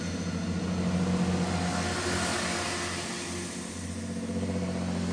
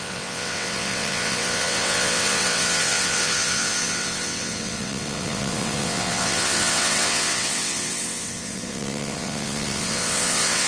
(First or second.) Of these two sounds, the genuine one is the first